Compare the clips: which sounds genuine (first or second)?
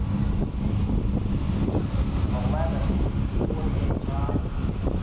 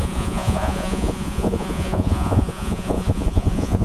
first